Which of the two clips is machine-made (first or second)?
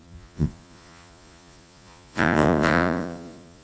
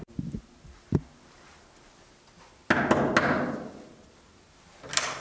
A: first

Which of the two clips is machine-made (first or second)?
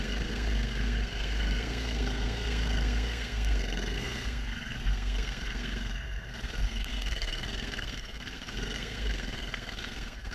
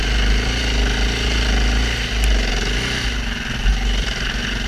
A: first